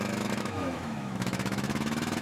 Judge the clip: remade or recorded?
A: remade